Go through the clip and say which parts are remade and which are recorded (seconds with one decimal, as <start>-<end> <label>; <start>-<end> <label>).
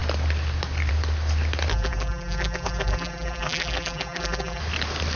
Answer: 0.0-1.7 recorded; 1.7-4.6 remade; 4.6-5.2 recorded